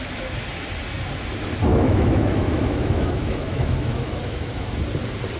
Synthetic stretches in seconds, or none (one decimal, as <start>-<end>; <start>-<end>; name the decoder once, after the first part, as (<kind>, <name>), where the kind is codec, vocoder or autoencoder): 1.7-4.8 (autoencoder, DAC-VAE)